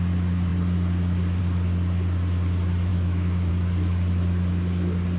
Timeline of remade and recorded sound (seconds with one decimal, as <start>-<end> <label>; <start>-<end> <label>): 0.0-2.9 recorded; 2.9-3.5 remade; 3.5-5.2 recorded